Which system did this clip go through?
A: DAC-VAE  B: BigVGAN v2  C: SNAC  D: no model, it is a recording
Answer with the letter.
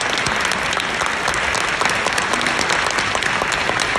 D